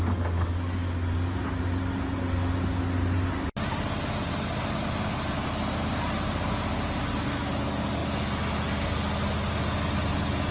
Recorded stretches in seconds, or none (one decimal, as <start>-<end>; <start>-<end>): 0.0-10.5